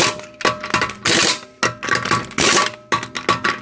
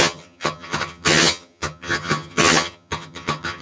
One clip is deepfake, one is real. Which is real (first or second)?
first